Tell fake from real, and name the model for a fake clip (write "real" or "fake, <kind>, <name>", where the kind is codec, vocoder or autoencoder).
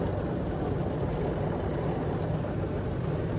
real